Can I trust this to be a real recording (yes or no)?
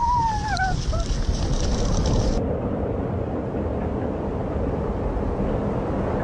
yes